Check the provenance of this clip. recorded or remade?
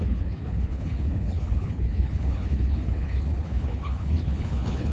remade